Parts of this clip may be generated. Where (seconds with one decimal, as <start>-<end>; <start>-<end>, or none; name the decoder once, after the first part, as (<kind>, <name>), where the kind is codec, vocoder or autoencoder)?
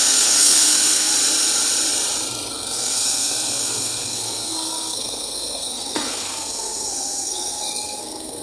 0.0-1.1 (codec, SNAC); 2.5-8.4